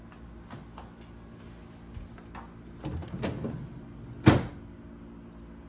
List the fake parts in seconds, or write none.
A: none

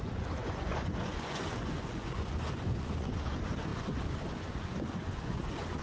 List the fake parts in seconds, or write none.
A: 0.0-5.8

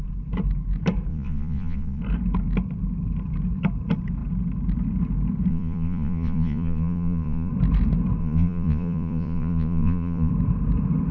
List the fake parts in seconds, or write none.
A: 1.1-2.0; 5.5-7.5; 8.2-10.3